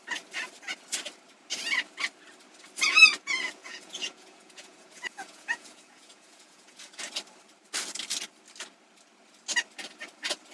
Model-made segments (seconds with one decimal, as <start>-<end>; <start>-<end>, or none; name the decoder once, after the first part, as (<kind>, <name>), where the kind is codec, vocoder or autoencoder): 3.6-7.0 (vocoder, Vocos)